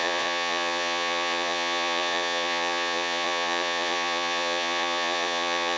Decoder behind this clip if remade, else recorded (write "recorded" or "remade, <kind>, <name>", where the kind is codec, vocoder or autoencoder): remade, vocoder, Vocos